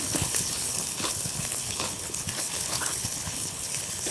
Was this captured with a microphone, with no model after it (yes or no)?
no